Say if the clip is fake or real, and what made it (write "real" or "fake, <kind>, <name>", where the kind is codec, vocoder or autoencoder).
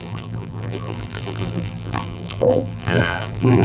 fake, vocoder, BigVGAN v2